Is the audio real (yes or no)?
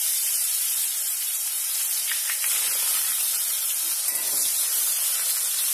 yes